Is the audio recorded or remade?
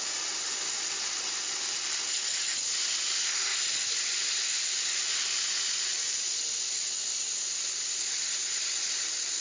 recorded